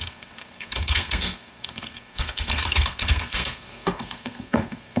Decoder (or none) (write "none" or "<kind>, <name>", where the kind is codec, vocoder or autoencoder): codec, SNAC